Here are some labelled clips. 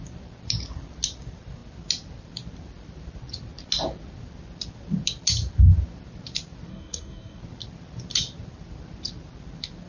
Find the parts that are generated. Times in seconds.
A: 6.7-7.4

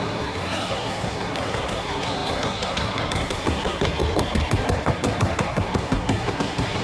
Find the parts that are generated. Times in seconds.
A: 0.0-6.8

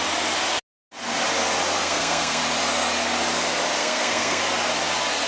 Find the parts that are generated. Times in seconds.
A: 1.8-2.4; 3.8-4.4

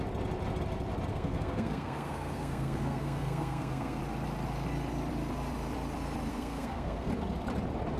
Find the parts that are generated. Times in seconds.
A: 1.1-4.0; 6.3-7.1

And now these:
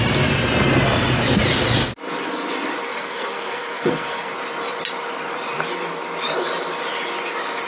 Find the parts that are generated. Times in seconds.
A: 2.9-4.3

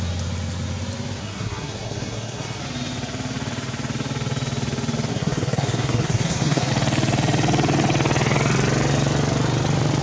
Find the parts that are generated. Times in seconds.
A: 1.2-2.6; 5.1-6.7